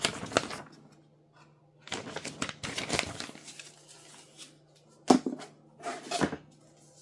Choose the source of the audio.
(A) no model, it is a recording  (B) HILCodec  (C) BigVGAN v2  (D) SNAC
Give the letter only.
A